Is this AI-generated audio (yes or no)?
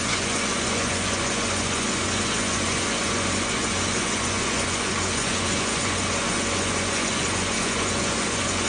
yes